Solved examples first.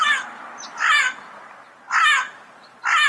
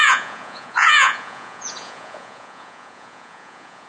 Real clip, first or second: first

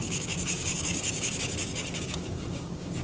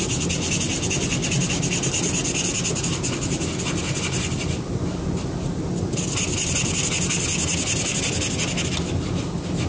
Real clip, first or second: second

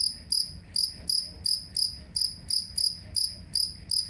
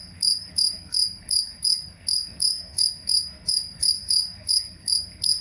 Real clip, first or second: first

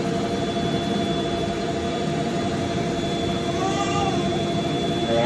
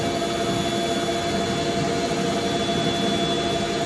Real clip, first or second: second